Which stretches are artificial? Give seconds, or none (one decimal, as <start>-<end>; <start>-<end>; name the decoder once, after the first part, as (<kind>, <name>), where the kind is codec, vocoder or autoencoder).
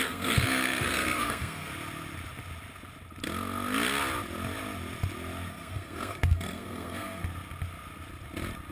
0.0-1.7 (codec, SNAC); 5.5-7.2